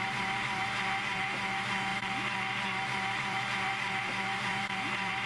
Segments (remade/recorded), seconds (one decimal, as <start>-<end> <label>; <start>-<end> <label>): 0.0-5.3 remade